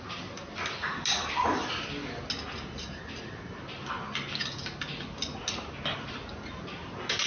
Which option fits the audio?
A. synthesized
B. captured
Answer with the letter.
B